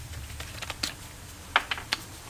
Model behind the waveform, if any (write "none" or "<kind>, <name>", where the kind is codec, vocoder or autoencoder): none